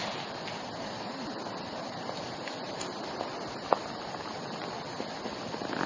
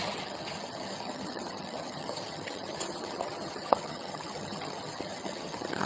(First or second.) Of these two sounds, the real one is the first